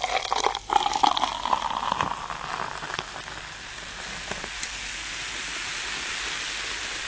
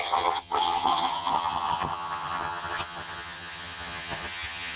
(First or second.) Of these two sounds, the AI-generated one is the second